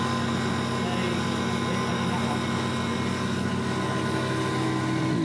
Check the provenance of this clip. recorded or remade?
recorded